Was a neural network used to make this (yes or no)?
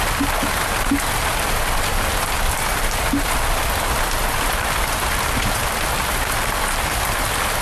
no